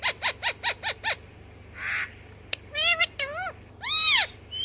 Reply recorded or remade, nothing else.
recorded